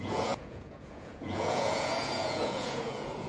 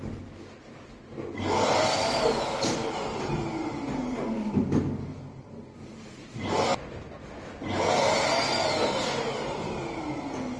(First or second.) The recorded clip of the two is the second